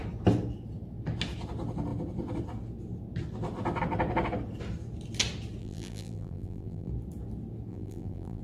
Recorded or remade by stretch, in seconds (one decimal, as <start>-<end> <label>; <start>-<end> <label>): 0.0-5.6 recorded; 5.6-6.9 remade; 6.9-7.7 recorded; 7.7-8.4 remade

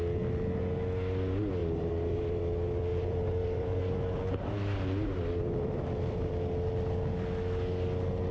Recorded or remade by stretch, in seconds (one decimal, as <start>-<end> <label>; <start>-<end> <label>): 0.0-1.6 recorded; 1.6-2.4 remade; 2.4-2.9 recorded; 2.9-6.3 remade; 6.3-8.3 recorded

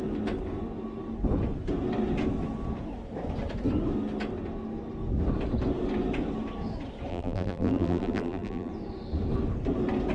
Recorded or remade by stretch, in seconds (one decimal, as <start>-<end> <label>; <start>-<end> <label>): 0.0-7.1 recorded; 7.1-8.7 remade; 8.7-10.1 recorded

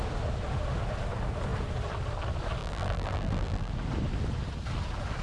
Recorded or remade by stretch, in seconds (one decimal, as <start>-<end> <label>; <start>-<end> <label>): 0.0-2.6 recorded; 2.6-3.7 remade; 3.7-5.2 recorded

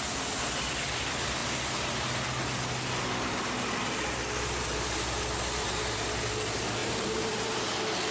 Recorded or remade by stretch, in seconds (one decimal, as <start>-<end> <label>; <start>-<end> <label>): 0.0-6.8 recorded; 6.8-7.6 remade; 7.6-8.1 recorded